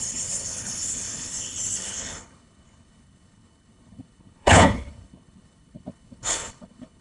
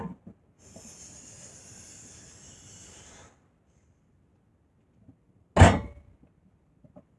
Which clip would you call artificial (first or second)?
first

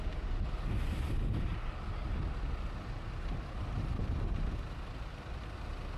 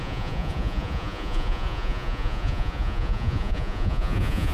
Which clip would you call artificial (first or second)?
second